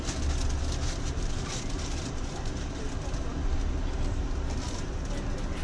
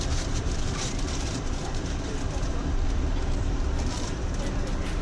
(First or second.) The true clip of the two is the first